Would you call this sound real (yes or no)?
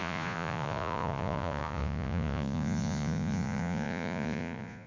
no